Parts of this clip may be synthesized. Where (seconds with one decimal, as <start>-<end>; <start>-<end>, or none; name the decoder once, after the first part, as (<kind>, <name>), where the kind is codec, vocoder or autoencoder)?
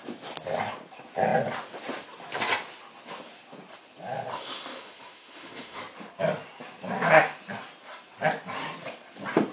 4.3-5.8 (autoencoder, DAC-VAE)